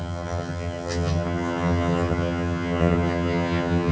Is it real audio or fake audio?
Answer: fake